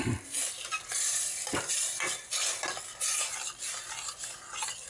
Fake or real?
real